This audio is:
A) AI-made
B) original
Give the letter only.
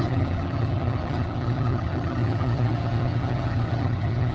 A